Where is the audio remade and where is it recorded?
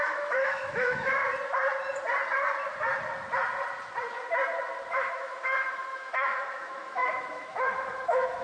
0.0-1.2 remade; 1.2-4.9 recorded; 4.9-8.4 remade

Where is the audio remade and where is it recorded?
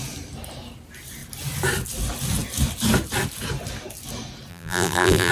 0.0-4.5 recorded; 4.5-5.3 remade